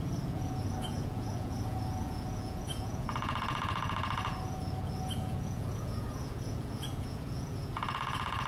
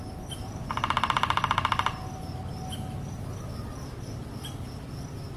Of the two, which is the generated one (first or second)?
first